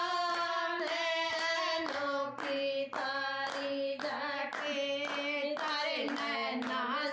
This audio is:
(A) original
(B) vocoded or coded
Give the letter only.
A